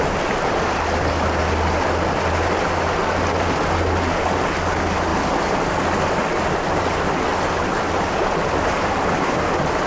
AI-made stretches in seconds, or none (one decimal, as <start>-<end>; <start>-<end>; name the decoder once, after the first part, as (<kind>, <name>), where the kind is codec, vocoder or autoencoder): none